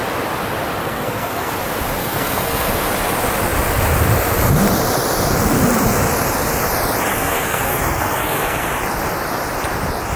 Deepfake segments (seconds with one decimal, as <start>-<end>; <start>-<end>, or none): 0.8-1.5; 2.0-2.7; 7.1-8.7